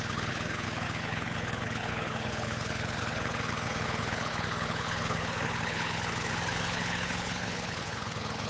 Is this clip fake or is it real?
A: fake